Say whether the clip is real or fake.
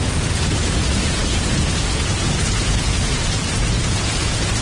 fake